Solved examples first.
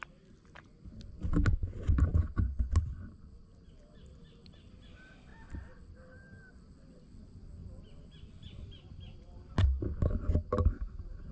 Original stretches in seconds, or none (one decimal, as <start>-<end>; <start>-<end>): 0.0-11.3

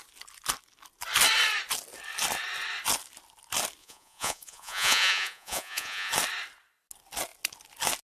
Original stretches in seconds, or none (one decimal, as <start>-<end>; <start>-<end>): 0.0-3.8; 6.1-8.1

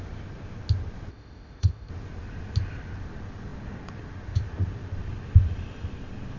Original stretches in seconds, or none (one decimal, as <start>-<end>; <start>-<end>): 0.0-1.1; 1.9-6.4

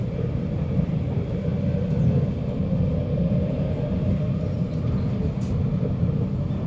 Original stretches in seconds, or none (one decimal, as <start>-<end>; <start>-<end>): 1.5-5.5

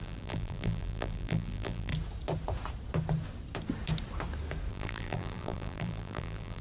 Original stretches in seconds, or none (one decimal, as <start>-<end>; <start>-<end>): 1.9-4.7